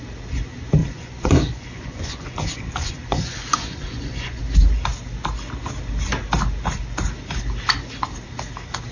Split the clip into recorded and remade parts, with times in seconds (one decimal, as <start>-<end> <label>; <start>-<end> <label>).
0.0-0.8 recorded; 0.8-4.4 remade; 4.4-8.9 recorded